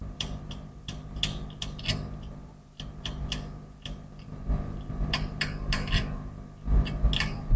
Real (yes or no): yes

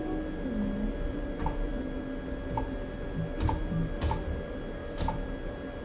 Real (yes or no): yes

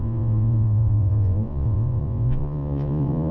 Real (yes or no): no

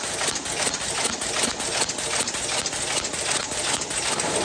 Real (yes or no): yes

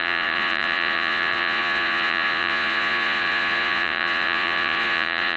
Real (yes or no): no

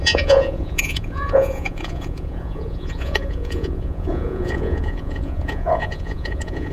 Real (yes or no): no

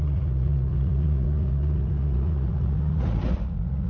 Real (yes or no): no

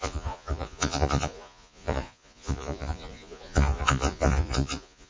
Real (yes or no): no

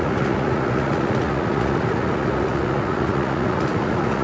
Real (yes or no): no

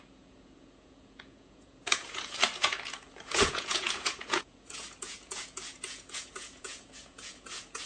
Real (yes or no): no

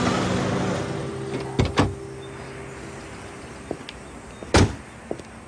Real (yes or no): yes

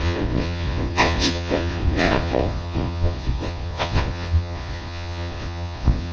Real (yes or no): no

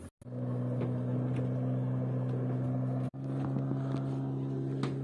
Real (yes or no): yes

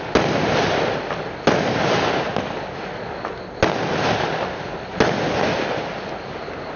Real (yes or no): yes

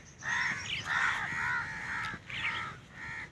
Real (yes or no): yes